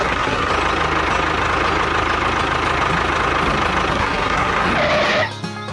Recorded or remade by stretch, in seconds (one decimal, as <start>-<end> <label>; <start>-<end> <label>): 0.0-0.5 remade; 0.5-3.9 recorded; 3.9-4.7 remade; 4.7-5.7 recorded